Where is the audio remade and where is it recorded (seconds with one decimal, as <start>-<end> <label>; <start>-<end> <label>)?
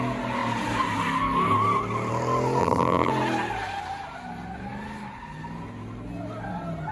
0.0-2.6 recorded; 2.6-3.1 remade; 3.1-6.9 recorded